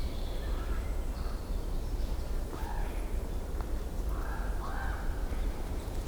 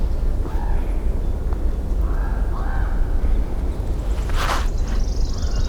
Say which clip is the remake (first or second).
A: first